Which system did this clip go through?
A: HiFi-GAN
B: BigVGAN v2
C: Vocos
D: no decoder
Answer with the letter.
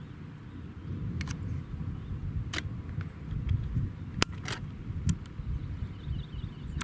D